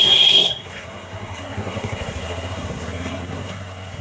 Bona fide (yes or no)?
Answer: no